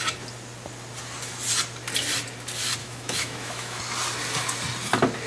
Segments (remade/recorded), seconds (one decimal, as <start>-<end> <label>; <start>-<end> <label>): 0.0-2.8 recorded; 2.8-3.8 remade; 3.8-5.3 recorded